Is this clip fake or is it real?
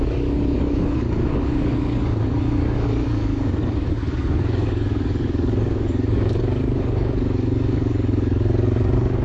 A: fake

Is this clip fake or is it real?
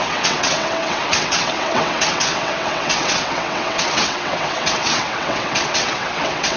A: fake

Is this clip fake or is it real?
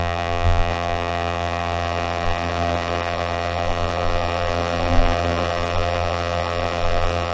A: fake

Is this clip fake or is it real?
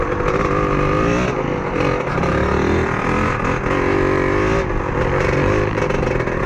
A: real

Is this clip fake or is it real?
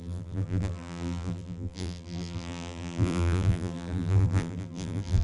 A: fake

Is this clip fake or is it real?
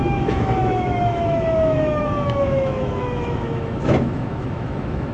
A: fake